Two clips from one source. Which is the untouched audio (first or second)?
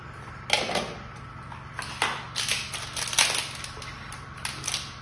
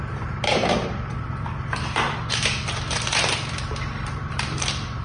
first